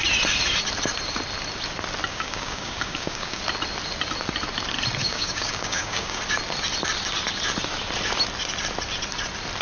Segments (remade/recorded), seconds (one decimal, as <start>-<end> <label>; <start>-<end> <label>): 0.0-2.1 recorded; 2.1-3.4 remade; 3.4-5.0 recorded; 5.0-6.2 remade; 6.2-9.6 recorded